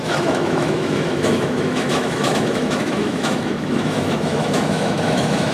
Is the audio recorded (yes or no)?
no